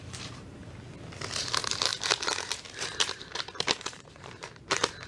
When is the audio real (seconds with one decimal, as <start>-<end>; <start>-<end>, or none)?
0.6-1.4; 1.9-2.6